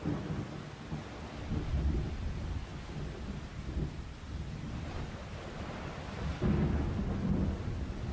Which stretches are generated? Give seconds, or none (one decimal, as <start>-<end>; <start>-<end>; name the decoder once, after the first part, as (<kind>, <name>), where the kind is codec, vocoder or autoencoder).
none